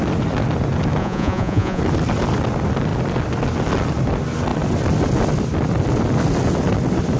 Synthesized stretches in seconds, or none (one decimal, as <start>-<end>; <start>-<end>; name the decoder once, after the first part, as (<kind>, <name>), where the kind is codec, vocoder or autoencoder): 1.0-1.8 (vocoder, Vocos)